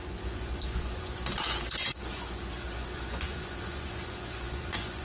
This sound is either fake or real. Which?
fake